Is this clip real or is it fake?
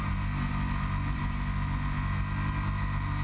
real